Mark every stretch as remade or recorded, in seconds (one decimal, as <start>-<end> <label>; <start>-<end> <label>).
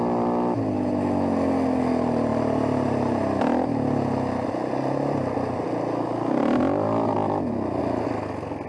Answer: 0.0-8.7 recorded